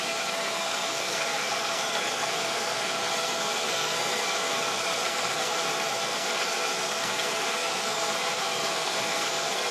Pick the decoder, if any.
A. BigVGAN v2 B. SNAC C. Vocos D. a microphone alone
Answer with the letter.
B